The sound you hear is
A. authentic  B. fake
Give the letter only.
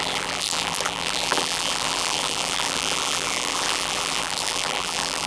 B